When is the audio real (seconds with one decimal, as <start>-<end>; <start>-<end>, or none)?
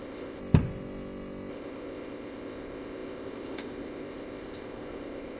0.4-1.5